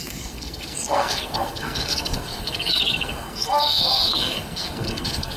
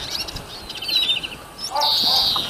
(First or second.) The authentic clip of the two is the second